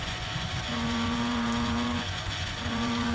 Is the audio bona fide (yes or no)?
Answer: no